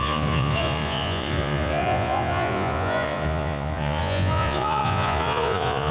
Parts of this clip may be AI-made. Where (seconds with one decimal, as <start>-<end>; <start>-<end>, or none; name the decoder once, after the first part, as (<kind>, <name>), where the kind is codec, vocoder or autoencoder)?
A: 0.0-5.9 (vocoder, Vocos)